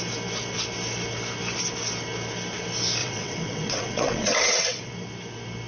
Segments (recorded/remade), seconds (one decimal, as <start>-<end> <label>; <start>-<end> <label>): 0.0-3.0 recorded; 3.0-4.9 remade; 4.9-5.7 recorded